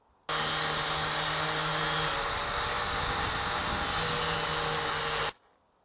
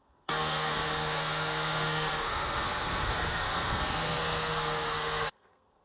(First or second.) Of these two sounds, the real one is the first